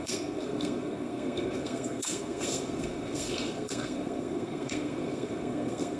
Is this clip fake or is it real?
fake